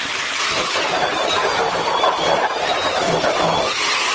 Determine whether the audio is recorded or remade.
remade